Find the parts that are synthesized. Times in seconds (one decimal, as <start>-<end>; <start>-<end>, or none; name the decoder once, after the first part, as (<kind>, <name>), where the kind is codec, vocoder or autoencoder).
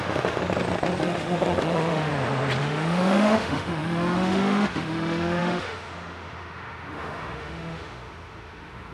0.0-0.4 (autoencoder, DAC-VAE); 1.0-2.1; 2.6-8.9